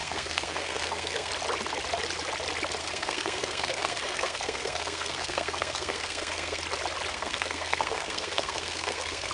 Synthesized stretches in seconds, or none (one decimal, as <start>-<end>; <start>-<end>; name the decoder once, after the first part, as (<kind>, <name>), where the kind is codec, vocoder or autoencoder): 0.0-1.3 (codec, SNAC); 2.8-6.6; 7.1-9.3